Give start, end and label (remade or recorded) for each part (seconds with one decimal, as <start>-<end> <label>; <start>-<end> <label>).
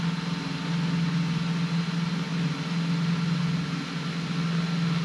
0.0-5.0 recorded